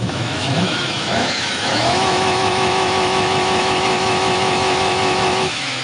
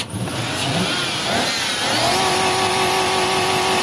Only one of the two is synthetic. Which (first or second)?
first